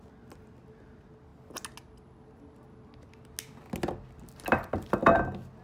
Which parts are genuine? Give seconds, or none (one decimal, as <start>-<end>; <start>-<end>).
0.0-5.6